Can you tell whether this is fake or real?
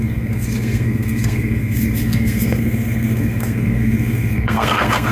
fake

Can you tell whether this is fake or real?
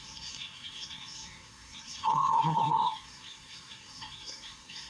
fake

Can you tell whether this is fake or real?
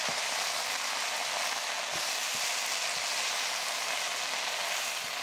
real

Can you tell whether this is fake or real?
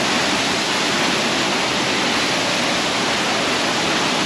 real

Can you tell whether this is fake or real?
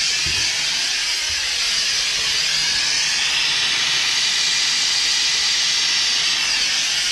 real